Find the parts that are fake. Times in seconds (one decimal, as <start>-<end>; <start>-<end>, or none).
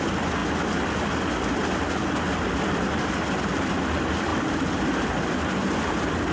none